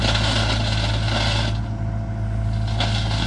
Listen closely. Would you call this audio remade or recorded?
recorded